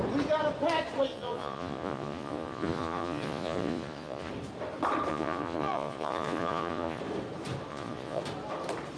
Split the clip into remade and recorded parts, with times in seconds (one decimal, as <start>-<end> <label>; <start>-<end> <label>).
0.0-1.1 recorded; 1.1-4.3 remade; 4.3-5.1 recorded; 5.1-7.0 remade; 7.0-7.7 recorded; 7.7-8.2 remade; 8.2-9.0 recorded